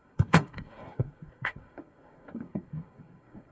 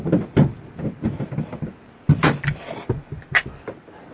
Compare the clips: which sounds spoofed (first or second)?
first